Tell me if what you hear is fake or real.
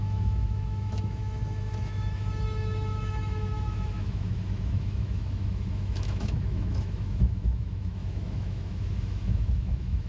fake